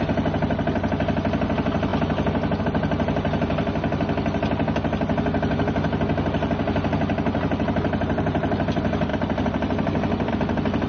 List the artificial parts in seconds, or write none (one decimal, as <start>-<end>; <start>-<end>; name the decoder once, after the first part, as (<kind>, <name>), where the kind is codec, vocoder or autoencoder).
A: none